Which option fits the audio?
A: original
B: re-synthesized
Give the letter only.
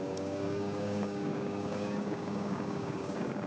B